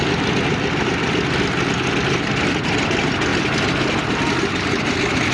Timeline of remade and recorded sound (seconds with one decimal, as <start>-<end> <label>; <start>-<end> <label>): 0.0-3.3 remade; 3.3-4.0 recorded; 4.0-5.3 remade

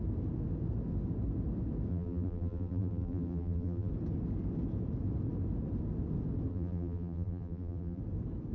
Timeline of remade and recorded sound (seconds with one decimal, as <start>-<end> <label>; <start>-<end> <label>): 0.0-1.9 recorded; 1.9-3.9 remade; 3.9-6.5 recorded; 6.5-8.0 remade; 8.0-8.5 recorded